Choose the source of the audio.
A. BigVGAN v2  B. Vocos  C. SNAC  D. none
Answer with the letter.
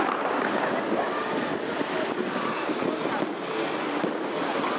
D